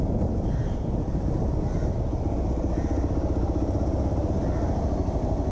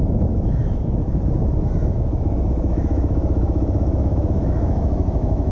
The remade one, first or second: second